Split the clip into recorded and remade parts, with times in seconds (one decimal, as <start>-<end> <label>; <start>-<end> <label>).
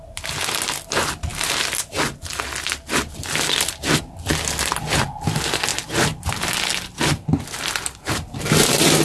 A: 0.0-9.0 recorded